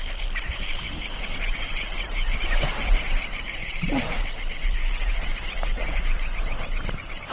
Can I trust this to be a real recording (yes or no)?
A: no